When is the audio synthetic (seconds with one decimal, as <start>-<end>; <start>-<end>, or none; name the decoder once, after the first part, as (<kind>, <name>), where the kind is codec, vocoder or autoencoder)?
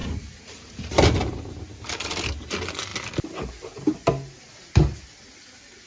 0.0-2.5 (vocoder, BigVGAN v2)